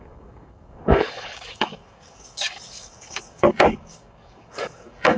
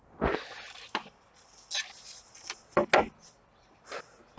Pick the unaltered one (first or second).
second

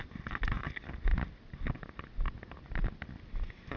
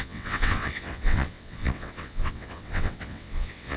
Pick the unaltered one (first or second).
first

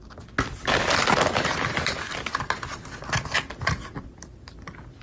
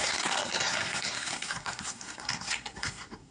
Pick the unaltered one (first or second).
first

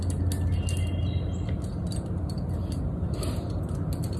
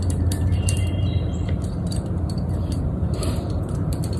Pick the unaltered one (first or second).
first